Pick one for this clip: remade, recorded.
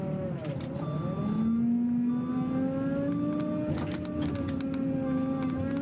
recorded